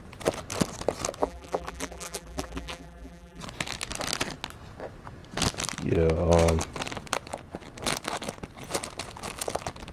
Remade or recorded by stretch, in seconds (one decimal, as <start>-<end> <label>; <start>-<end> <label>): 0.0-1.2 recorded; 1.2-3.4 remade; 3.4-9.9 recorded